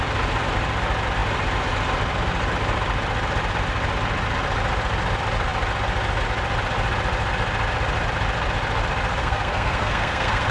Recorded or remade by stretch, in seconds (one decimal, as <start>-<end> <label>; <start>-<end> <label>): 0.0-9.2 recorded; 9.2-10.5 remade